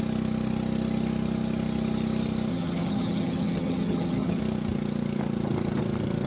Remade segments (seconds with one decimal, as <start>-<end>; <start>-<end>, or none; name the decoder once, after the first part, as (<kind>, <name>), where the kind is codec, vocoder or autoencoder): 2.5-4.4 (vocoder, HiFi-GAN)